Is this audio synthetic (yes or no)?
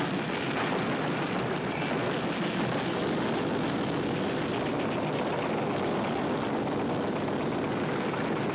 no